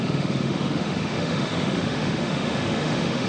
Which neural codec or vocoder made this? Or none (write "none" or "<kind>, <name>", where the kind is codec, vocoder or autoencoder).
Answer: autoencoder, DAC-VAE